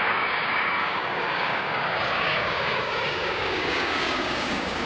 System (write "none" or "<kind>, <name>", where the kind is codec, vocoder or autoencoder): codec, DAC